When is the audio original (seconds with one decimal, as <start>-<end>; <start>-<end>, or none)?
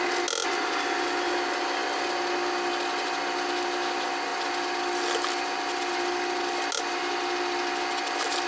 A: 0.0-8.5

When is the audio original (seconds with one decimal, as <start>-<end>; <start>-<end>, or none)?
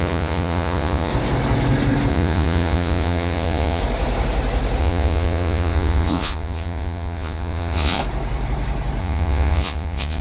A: 1.1-2.1; 3.8-4.8; 8.0-9.0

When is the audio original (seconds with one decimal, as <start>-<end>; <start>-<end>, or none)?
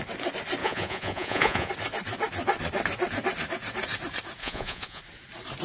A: 0.0-0.6; 1.7-4.4; 5.0-5.6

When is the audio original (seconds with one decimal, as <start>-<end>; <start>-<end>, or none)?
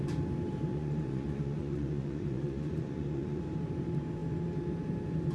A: 0.0-0.7; 3.4-5.3